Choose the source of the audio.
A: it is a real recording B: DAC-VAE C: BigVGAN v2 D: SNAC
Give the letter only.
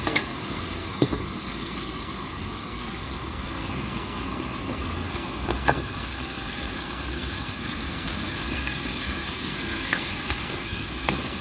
D